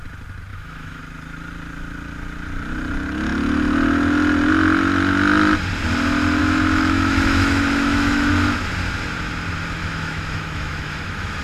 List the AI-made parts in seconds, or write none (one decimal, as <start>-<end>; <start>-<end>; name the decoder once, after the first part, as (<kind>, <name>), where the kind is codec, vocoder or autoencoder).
0.5-1.0 (autoencoder, DAC-VAE); 6.4-8.3; 9.8-11.4